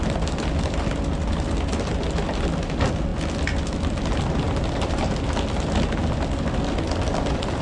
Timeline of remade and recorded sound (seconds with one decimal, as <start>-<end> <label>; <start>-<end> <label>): 0.0-7.6 recorded